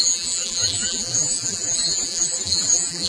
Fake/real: fake